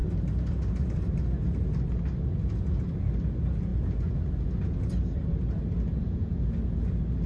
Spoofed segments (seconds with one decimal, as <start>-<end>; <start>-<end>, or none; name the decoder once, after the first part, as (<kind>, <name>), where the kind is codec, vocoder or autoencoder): 0.0-1.3 (vocoder, BigVGAN v2)